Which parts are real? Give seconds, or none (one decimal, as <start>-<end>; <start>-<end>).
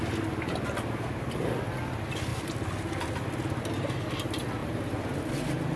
0.0-5.8